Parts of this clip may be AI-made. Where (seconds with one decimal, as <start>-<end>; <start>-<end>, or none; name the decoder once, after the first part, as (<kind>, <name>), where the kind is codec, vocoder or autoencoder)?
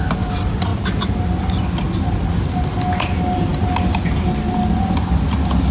none